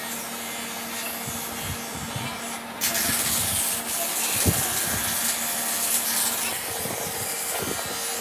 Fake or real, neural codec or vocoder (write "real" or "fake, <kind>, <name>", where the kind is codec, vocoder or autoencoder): real